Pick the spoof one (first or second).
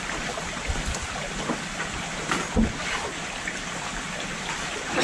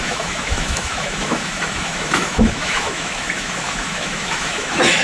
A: second